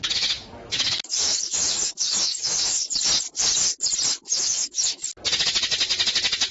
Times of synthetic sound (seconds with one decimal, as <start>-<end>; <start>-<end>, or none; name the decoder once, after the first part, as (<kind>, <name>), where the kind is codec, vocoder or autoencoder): 0.0-2.8 (autoencoder, DAC-VAE); 4.1-5.0